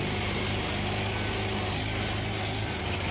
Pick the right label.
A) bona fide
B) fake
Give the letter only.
A